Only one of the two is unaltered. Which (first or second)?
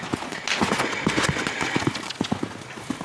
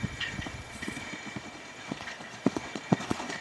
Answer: first